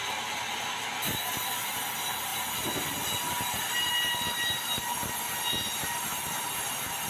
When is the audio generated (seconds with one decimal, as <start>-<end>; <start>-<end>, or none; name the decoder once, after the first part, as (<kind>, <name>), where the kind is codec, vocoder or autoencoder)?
none